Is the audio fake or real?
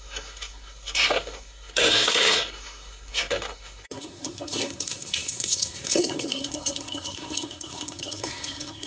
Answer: fake